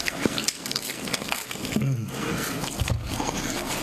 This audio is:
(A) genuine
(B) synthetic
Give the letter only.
B